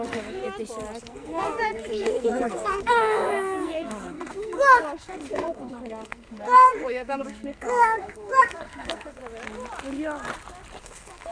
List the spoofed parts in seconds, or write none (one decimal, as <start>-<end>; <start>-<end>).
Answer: 0.0-0.4; 1.0-9.2; 10.8-11.3